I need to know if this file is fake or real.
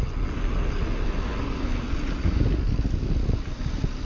real